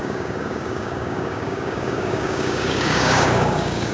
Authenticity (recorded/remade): remade